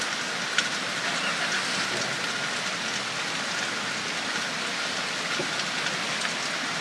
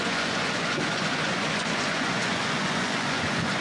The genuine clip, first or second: first